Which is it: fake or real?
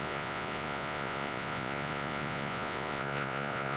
fake